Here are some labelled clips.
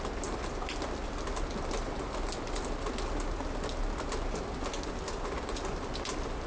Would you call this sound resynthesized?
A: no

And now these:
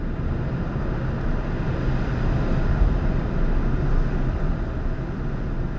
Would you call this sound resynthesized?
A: no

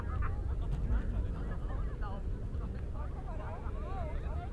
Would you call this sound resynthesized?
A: no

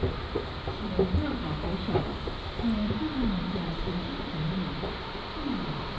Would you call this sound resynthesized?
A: no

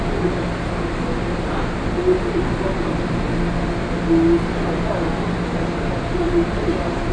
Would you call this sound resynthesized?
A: no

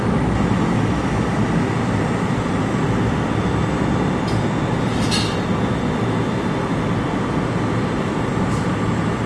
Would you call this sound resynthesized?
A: no